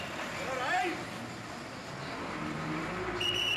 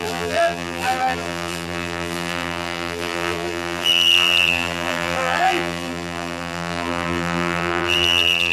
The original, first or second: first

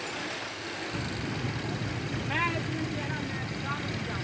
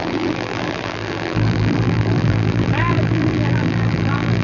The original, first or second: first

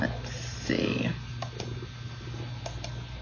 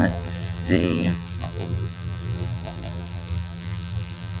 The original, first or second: first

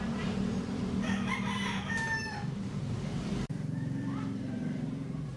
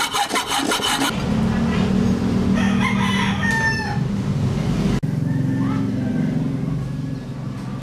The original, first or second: second